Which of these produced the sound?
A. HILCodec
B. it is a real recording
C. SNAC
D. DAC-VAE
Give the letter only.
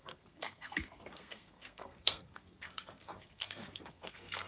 C